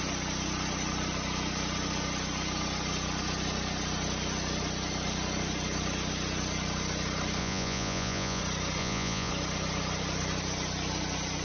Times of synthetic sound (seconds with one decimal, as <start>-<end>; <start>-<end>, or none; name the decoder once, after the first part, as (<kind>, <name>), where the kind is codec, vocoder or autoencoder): 7.4-8.4 (vocoder, Vocos); 8.8-9.3